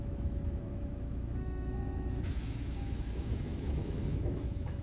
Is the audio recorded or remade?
remade